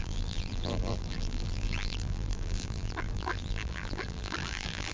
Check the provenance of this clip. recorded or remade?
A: remade